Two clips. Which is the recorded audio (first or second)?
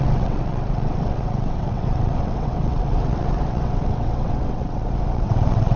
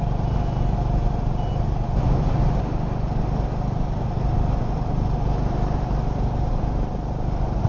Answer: second